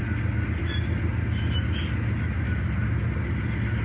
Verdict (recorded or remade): recorded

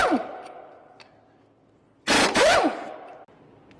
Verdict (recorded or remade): recorded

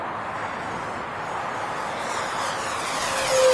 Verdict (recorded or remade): recorded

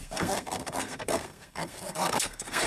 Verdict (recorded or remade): remade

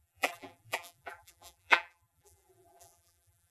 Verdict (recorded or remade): remade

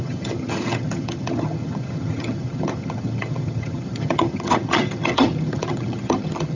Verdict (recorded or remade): remade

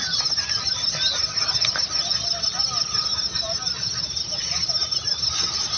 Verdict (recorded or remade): recorded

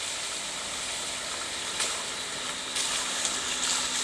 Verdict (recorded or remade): recorded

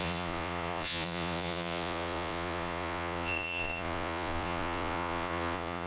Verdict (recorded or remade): remade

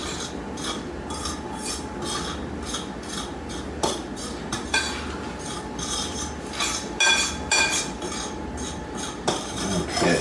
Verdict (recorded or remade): recorded